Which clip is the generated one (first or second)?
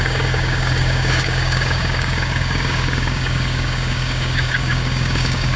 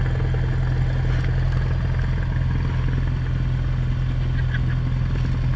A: first